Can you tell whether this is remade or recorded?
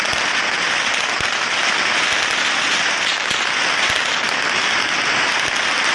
recorded